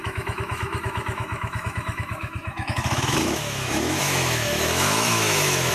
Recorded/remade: remade